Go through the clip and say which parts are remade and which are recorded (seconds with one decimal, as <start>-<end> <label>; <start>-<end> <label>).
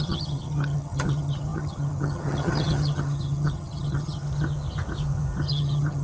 0.0-4.2 remade; 4.2-5.5 recorded; 5.5-6.0 remade